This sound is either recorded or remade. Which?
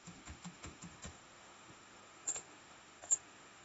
remade